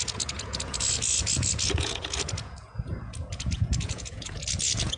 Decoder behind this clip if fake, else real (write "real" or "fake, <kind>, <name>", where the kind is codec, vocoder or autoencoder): fake, vocoder, Vocos